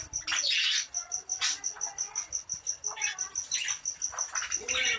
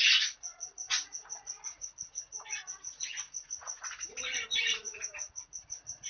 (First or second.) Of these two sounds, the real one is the first